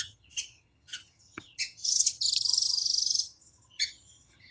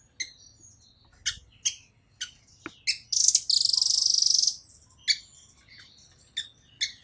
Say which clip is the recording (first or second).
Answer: second